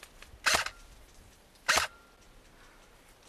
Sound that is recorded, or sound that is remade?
recorded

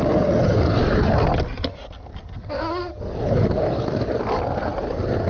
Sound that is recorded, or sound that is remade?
recorded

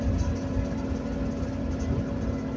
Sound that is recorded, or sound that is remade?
recorded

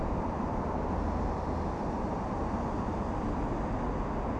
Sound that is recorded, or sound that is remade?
recorded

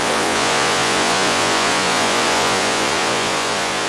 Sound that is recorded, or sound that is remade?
remade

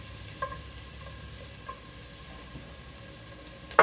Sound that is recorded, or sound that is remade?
recorded